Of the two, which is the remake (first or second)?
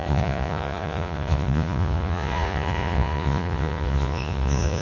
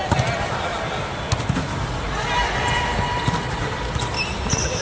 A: first